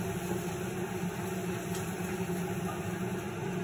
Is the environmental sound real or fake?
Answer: real